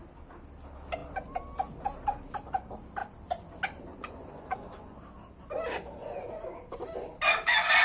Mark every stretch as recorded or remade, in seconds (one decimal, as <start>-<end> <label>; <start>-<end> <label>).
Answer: 0.0-3.9 recorded; 3.9-5.0 remade; 5.0-6.0 recorded; 6.0-6.7 remade; 6.7-7.8 recorded